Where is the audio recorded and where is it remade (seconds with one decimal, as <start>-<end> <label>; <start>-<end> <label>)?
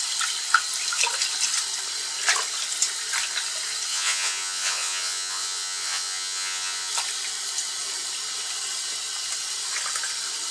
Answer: 0.0-3.9 recorded; 3.9-6.9 remade; 6.9-10.5 recorded